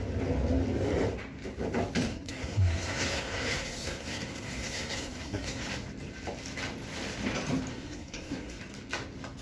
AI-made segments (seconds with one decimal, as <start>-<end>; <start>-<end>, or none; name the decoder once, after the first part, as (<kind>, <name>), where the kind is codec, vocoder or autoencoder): 2.1-5.6 (codec, SNAC); 7.7-8.6